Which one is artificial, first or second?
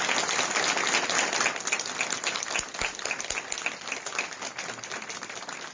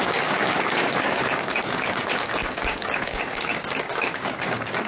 second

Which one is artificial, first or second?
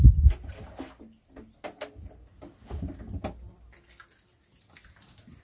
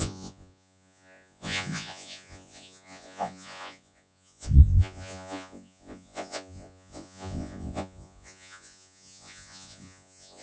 second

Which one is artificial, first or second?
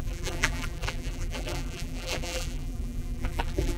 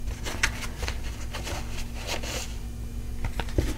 first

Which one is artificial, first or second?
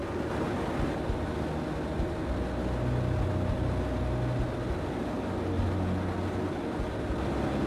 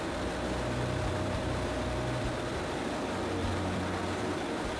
second